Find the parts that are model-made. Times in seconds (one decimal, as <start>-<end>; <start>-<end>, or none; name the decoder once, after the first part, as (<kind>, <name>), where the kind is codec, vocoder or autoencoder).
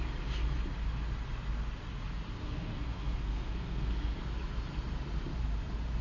2.4-4.2 (codec, SNAC)